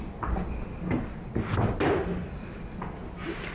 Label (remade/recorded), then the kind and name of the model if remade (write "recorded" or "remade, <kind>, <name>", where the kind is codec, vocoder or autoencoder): recorded